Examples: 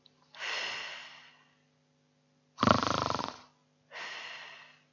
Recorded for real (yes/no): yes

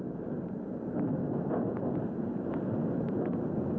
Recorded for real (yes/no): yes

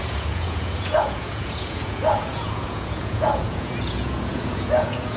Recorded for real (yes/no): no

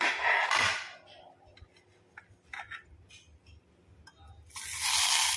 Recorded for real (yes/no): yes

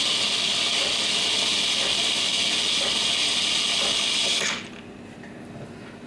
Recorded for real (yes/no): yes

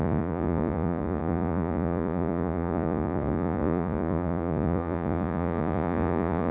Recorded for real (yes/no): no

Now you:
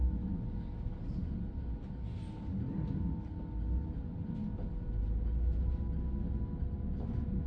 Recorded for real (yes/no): yes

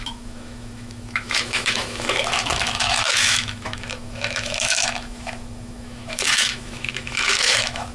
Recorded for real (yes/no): no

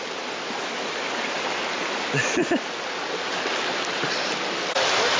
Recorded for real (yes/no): yes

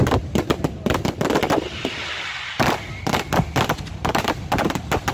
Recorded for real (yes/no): yes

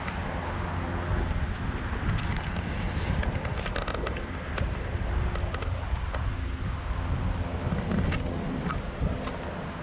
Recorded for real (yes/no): yes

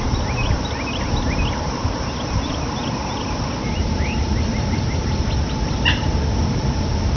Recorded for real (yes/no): yes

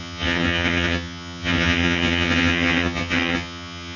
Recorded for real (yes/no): no